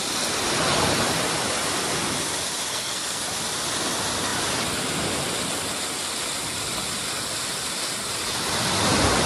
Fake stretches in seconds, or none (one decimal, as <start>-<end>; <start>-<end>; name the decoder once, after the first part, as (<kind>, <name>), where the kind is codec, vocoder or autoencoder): 2.7-3.2 (codec, SNAC)